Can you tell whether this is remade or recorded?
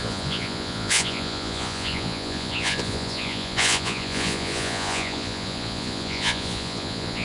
remade